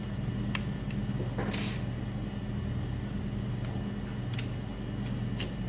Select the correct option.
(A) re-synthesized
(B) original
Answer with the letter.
B